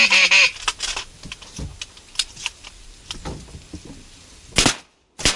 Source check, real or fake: real